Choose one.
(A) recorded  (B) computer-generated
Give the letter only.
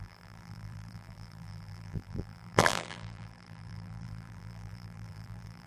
B